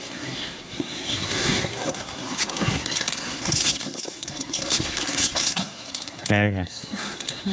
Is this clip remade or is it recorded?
remade